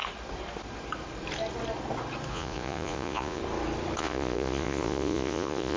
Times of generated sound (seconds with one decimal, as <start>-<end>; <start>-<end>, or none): 2.3-3.4; 4.0-5.8